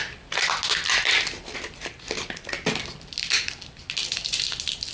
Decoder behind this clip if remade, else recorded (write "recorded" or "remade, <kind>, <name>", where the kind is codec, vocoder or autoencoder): recorded